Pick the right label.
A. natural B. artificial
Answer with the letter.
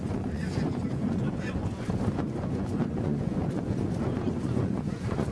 B